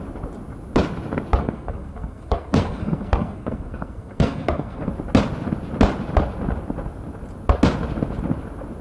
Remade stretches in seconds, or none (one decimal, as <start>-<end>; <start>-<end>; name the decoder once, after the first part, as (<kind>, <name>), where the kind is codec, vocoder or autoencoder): 1.4-4.9 (codec, SNAC)